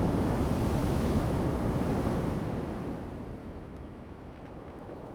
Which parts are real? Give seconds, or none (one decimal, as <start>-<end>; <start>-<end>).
0.0-0.8; 1.4-3.4